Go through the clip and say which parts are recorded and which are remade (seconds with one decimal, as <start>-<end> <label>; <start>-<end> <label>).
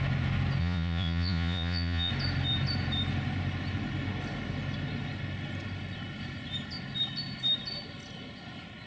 0.0-0.6 recorded; 0.6-2.1 remade; 2.1-8.9 recorded